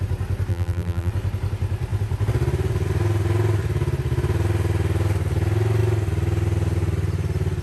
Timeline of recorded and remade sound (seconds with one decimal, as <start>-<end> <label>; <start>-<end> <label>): 0.0-0.5 recorded; 0.5-1.1 remade; 1.1-7.6 recorded